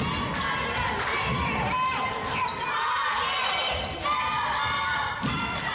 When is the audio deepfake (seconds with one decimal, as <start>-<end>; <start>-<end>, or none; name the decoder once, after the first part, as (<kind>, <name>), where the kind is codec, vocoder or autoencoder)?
none